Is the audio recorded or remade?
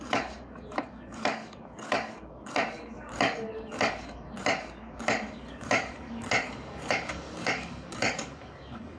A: remade